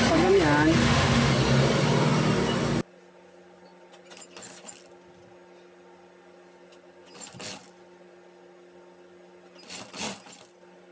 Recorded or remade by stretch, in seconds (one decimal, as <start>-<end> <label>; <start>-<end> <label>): 0.0-0.8 recorded; 0.8-1.3 remade; 1.3-10.9 recorded